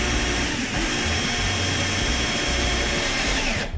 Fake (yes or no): yes